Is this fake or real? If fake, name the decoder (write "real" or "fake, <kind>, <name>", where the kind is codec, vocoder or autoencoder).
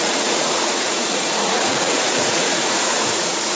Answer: fake, vocoder, Vocos